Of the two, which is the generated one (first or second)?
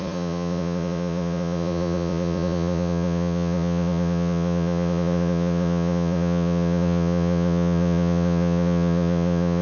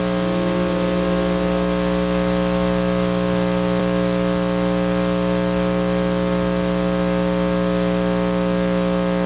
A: first